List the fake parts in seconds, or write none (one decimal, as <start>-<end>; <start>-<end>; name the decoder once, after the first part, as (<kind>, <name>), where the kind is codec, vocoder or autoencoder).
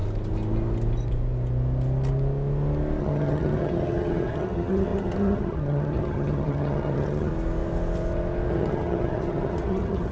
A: 3.0-7.3 (vocoder, HiFi-GAN); 8.5-10.1